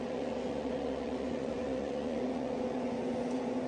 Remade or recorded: remade